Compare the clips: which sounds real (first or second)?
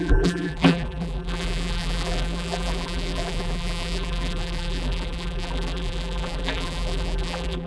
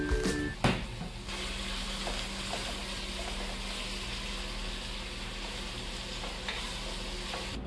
second